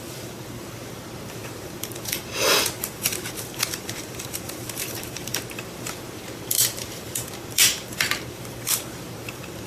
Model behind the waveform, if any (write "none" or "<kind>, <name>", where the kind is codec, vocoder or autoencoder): vocoder, BigVGAN v2